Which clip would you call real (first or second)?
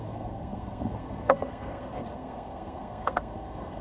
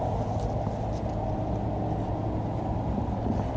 second